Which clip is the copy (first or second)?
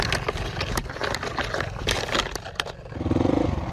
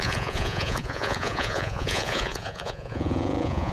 second